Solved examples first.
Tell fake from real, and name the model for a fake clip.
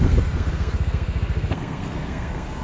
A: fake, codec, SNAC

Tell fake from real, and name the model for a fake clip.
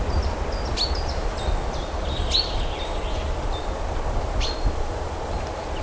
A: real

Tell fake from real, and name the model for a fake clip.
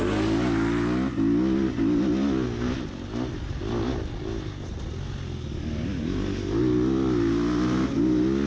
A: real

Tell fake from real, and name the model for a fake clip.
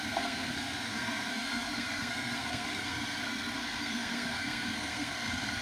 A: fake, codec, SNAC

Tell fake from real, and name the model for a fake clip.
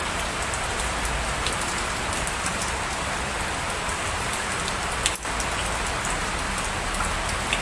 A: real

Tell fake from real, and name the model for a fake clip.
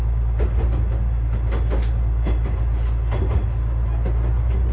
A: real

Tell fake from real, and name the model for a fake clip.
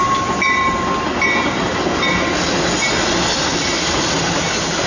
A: real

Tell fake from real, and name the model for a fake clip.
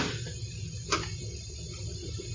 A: real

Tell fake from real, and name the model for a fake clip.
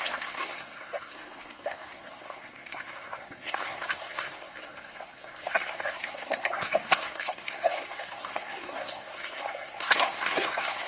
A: fake, codec, SNAC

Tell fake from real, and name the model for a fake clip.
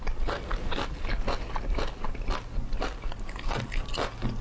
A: real